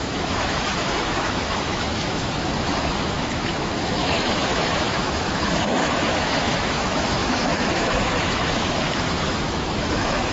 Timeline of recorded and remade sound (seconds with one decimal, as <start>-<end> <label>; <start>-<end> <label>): 0.0-10.3 remade